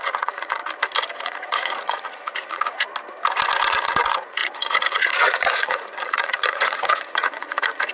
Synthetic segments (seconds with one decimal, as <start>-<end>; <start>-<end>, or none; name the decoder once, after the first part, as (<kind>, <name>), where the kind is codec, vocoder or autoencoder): 0.0-0.6 (vocoder, Vocos); 1.2-2.9; 3.7-7.9